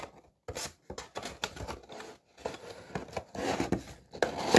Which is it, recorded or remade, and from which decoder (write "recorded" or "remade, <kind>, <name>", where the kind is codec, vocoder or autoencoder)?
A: recorded